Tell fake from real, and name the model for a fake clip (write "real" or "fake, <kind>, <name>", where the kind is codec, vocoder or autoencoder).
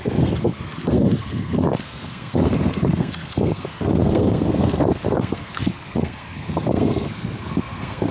fake, codec, SNAC